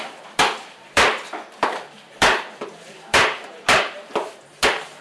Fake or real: fake